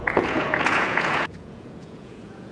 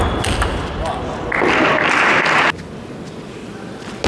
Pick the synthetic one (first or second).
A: first